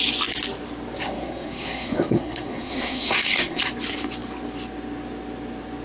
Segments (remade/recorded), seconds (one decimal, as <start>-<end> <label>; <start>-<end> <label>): 0.0-1.0 recorded; 1.0-3.6 remade; 3.6-5.8 recorded